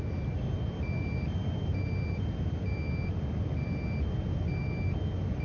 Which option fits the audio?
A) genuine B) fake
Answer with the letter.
A